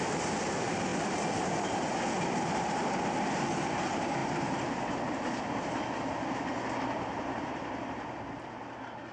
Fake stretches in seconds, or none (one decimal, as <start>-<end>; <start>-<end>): none